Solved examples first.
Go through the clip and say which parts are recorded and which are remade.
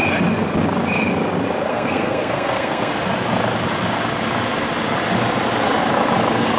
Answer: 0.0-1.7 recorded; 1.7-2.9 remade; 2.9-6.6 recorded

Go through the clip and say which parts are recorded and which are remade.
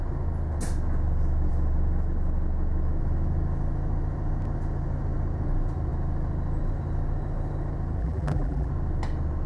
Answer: 0.0-8.0 recorded; 8.0-8.7 remade; 8.7-9.5 recorded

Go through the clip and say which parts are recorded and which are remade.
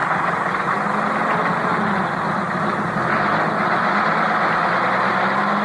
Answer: 0.0-5.6 recorded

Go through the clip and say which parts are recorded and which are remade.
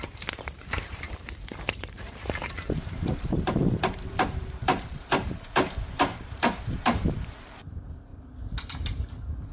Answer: 0.0-8.1 remade; 8.1-8.7 recorded; 8.7-9.5 remade